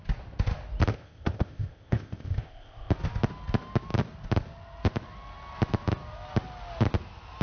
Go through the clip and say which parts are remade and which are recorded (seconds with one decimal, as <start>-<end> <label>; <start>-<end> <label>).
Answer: 0.0-0.9 recorded; 0.9-2.9 remade; 2.9-7.4 recorded